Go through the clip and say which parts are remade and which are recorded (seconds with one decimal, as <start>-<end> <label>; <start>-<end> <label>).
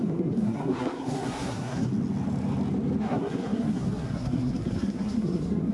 0.0-1.9 remade; 1.9-3.0 recorded; 3.0-5.7 remade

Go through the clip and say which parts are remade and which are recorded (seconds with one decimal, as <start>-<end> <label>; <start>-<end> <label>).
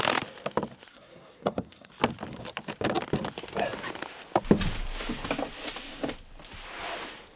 0.0-0.9 recorded; 0.9-1.9 remade; 1.9-7.4 recorded